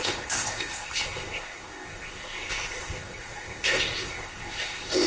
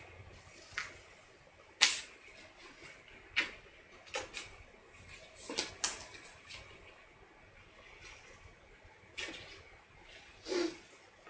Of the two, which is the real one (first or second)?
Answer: second